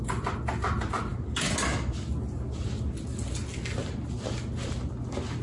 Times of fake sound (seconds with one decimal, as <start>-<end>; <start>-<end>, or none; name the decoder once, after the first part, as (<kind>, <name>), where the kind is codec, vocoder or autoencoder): none